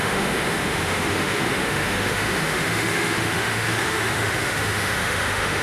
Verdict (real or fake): fake